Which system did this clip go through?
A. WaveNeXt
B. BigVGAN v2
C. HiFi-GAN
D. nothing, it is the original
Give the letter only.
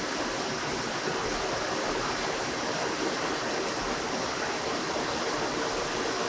D